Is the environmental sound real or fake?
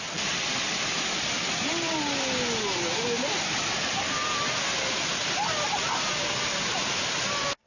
real